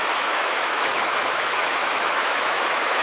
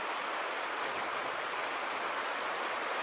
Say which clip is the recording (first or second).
second